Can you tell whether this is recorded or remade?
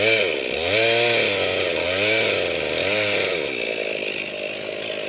recorded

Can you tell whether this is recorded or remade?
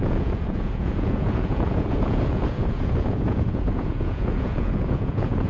remade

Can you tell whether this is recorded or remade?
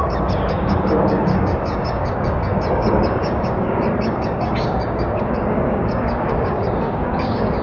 remade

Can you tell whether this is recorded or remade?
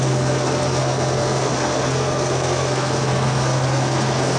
remade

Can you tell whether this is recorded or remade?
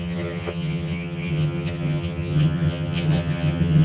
remade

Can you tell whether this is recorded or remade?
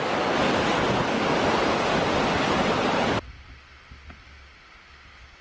recorded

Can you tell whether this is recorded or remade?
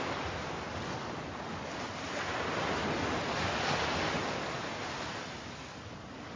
recorded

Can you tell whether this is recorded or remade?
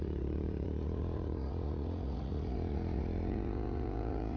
remade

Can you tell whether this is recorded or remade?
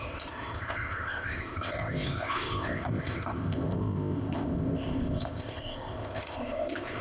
remade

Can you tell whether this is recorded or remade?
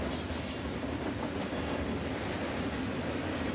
recorded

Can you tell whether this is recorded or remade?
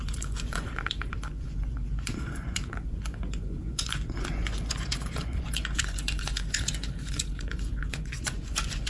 remade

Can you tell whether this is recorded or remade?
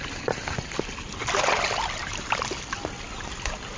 recorded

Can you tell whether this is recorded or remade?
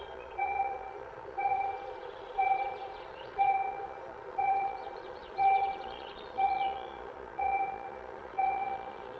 remade